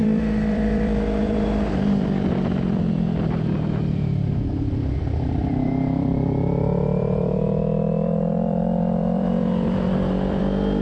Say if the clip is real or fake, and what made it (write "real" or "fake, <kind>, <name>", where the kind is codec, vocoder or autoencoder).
fake, vocoder, BigVGAN v2